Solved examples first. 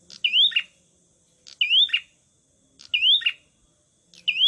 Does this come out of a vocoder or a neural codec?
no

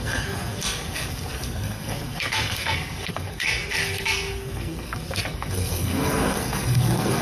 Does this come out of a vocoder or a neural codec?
yes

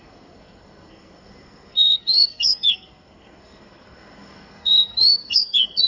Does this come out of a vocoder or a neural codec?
yes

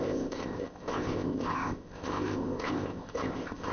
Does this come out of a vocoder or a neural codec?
yes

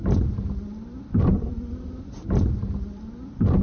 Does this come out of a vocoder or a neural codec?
no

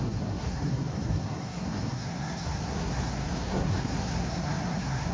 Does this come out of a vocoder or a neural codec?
yes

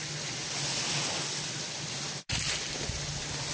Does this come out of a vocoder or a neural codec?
no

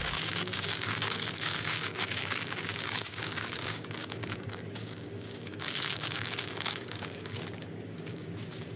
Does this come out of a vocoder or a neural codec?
yes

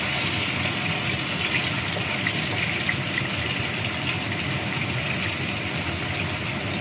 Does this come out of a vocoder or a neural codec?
no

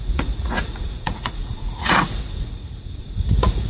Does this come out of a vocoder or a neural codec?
yes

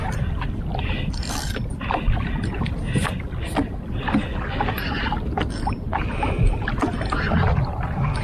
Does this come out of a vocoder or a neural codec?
no